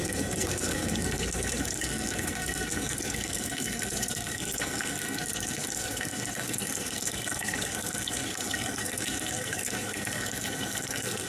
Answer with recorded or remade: remade